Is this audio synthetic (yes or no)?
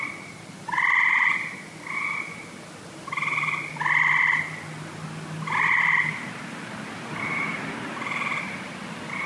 no